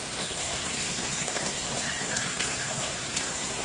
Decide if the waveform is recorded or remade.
remade